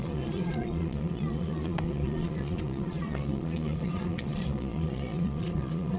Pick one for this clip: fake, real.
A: fake